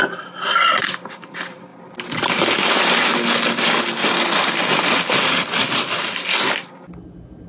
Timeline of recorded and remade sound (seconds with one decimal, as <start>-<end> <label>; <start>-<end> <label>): 0.0-7.5 recorded